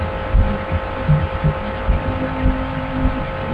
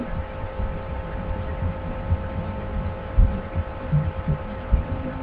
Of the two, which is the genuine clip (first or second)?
first